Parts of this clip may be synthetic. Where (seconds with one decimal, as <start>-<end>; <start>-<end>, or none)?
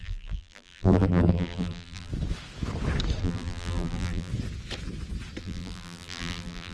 0.0-2.1; 3.2-4.3; 5.4-6.7